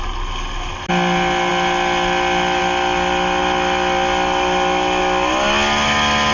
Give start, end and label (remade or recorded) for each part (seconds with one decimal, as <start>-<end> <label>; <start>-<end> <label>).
0.0-6.3 recorded